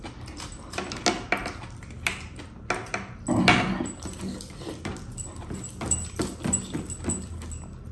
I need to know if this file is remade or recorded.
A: recorded